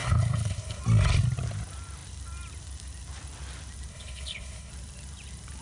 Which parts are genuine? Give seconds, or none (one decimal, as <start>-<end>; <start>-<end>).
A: 0.8-3.9; 4.7-5.6